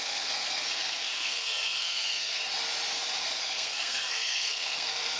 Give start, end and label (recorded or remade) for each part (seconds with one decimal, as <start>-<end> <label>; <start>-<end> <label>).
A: 0.0-2.4 remade; 2.4-3.4 recorded; 3.4-5.2 remade